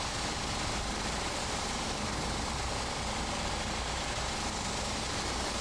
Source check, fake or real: fake